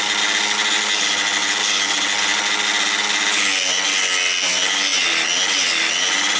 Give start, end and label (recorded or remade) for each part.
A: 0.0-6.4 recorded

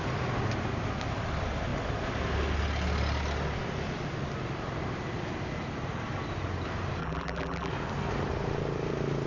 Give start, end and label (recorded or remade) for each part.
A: 0.0-7.0 recorded; 7.0-7.7 remade; 7.7-9.3 recorded

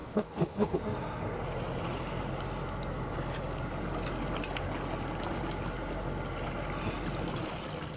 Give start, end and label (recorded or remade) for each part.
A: 0.0-0.8 remade; 0.8-8.0 recorded

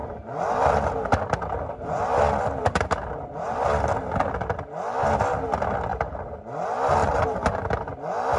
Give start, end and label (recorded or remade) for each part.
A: 0.0-2.6 recorded; 2.6-3.1 remade; 3.1-5.9 recorded; 5.9-6.4 remade; 6.4-7.0 recorded; 7.0-7.6 remade; 7.6-8.4 recorded

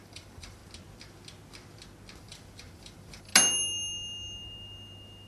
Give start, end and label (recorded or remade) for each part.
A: 0.0-0.6 remade; 0.6-2.2 recorded; 2.2-3.3 remade; 3.3-5.3 recorded

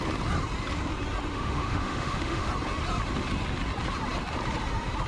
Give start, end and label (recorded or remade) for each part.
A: 0.0-1.3 recorded; 1.3-2.5 remade; 2.5-5.1 recorded